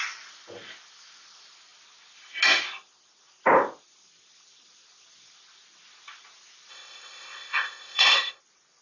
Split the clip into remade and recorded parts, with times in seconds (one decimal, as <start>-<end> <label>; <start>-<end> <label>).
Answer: 0.0-6.7 recorded; 6.7-8.4 remade; 8.4-8.8 recorded